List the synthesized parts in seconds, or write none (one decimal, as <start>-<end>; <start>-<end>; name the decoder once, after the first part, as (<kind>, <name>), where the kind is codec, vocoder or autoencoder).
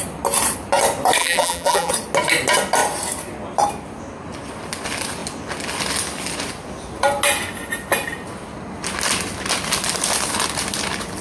1.2-1.9 (vocoder, BigVGAN v2)